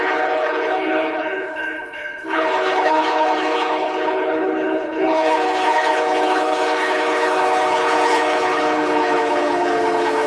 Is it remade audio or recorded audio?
remade